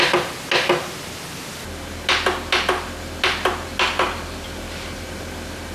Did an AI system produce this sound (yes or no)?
no